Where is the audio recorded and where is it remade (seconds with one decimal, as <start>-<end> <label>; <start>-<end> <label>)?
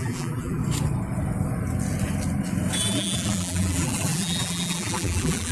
0.0-0.6 remade; 0.6-2.8 recorded; 2.8-5.5 remade